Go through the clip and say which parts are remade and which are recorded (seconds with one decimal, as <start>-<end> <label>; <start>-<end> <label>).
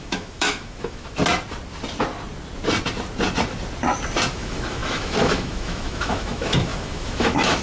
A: 0.0-1.2 remade; 1.2-4.3 recorded; 4.3-7.6 remade